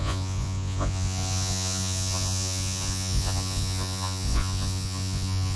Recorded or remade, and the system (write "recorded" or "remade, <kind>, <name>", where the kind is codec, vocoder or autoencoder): remade, vocoder, Vocos